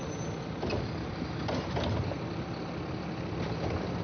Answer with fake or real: real